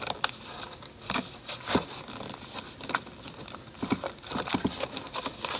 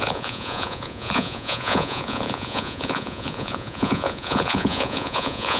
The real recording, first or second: first